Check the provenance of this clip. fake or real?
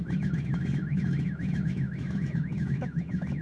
fake